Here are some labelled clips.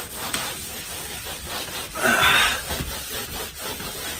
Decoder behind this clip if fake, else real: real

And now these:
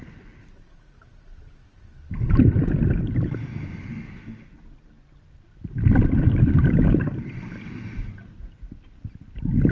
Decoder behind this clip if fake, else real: real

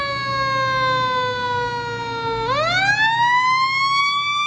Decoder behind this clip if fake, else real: real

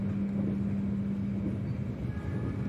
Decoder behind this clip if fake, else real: real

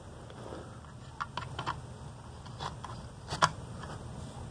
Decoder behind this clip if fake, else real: real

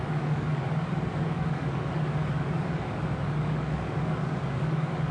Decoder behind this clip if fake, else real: fake, codec, DAC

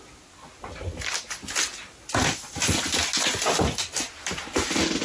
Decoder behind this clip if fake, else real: real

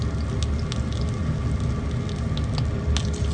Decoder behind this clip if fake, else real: real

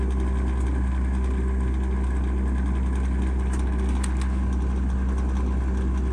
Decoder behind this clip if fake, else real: real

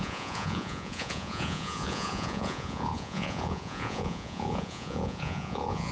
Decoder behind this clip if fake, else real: fake, vocoder, Vocos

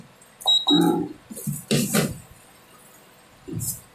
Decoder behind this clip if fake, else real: real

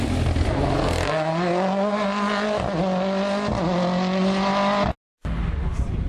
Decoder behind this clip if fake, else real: real